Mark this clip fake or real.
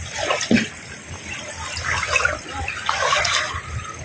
real